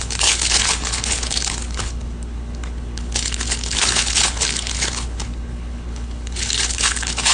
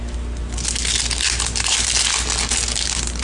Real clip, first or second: second